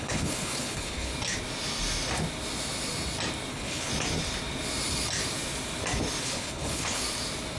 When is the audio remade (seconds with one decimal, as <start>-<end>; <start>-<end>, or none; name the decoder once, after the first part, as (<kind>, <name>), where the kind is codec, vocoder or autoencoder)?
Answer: 0.0-1.1 (codec, HILCodec); 3.5-3.9; 6.2-7.0